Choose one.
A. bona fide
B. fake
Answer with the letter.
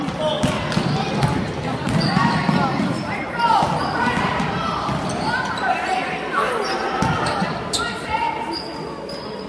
A